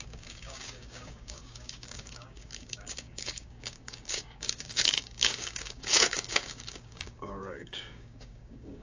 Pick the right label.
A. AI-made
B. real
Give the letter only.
A